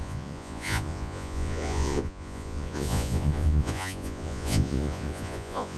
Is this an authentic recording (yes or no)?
no